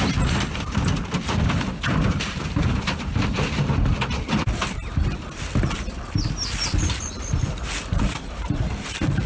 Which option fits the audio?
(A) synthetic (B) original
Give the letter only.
A